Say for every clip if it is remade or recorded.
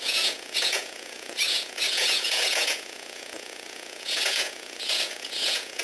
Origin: remade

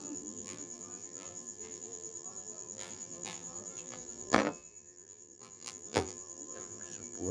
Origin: remade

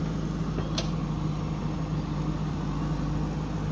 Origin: recorded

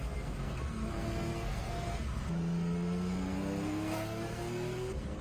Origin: remade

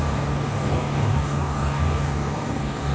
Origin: remade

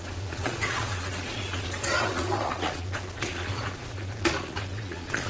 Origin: remade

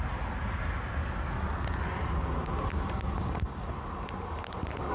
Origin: recorded